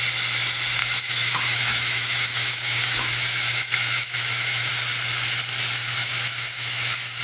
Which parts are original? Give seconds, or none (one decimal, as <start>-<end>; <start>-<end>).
0.0-0.8; 4.7-6.0